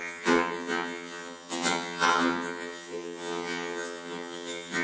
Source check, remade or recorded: remade